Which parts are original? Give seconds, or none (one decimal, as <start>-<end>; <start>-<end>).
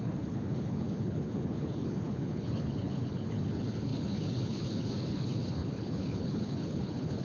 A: none